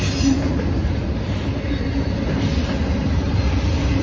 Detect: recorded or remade recorded